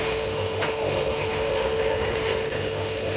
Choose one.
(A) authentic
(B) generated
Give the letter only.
B